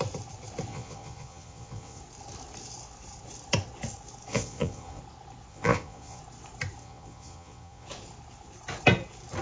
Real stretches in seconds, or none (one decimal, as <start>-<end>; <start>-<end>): 0.0-0.7; 2.0-4.3; 5.0-5.5; 6.2-6.8; 7.9-9.4